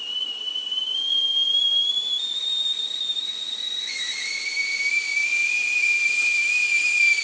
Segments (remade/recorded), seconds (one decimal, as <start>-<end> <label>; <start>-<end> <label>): 0.0-7.2 recorded